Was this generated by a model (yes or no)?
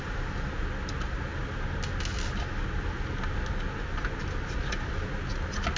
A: no